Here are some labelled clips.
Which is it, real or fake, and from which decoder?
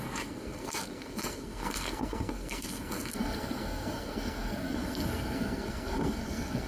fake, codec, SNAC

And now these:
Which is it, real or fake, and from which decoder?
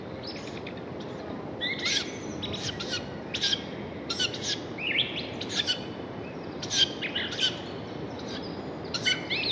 real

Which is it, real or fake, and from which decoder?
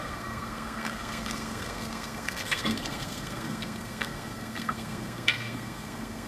fake, codec, SNAC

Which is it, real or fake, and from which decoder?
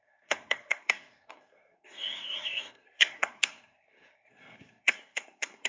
fake, codec, SNAC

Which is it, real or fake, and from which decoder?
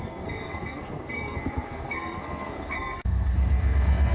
fake, codec, SNAC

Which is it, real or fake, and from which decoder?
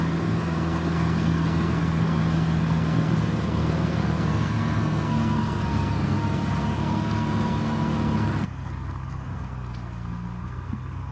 fake, codec, SNAC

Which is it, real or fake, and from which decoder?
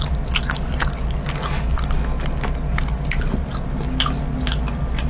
real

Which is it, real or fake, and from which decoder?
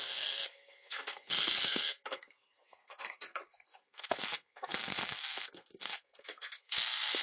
fake, codec, SNAC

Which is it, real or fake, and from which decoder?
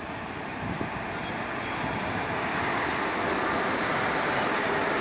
real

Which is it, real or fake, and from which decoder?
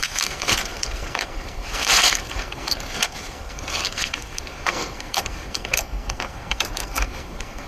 fake, codec, SNAC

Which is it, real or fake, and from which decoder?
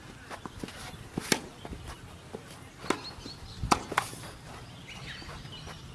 real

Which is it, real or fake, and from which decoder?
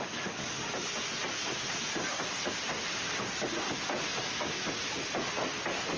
real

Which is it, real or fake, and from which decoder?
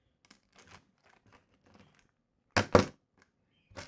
real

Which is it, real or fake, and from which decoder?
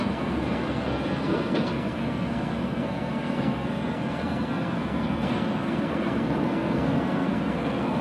fake, codec, SNAC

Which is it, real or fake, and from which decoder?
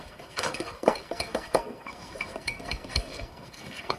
fake, codec, SNAC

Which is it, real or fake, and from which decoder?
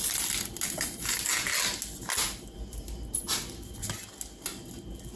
real